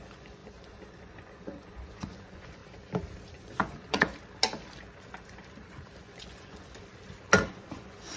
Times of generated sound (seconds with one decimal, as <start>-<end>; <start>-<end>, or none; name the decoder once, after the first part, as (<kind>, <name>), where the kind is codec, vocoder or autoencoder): 0.0-2.6 (vocoder, Vocos); 3.3-4.1; 6.0-6.9; 7.5-8.2